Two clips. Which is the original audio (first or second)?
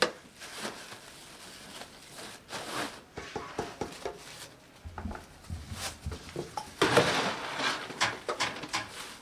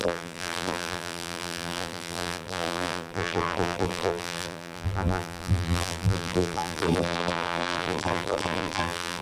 first